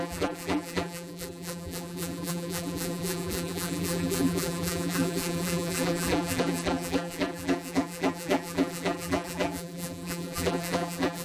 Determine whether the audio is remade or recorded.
remade